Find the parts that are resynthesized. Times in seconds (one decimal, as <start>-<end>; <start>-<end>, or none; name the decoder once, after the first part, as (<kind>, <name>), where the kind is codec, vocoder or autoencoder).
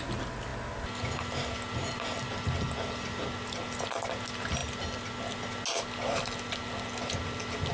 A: none